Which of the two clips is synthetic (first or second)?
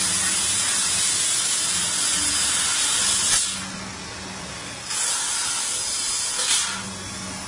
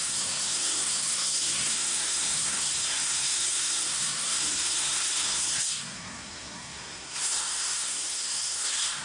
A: second